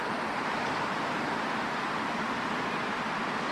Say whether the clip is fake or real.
real